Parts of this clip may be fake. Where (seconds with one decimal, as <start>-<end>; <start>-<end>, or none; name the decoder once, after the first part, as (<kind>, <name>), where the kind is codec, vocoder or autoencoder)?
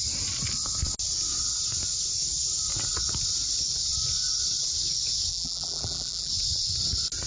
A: 5.3-6.3 (vocoder, BigVGAN v2)